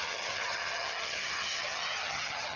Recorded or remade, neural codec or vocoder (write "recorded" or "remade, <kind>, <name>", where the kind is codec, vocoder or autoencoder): remade, vocoder, HiFi-GAN